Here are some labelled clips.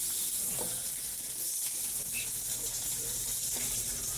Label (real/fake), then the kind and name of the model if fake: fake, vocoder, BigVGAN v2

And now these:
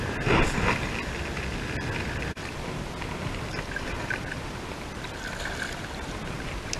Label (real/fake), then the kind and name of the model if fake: real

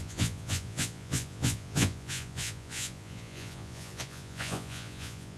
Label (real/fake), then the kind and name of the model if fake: fake, vocoder, Vocos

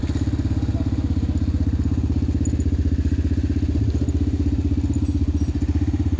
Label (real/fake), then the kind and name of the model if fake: real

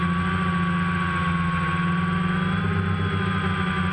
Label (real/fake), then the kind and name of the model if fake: real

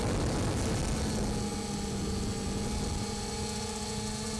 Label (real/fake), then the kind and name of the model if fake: real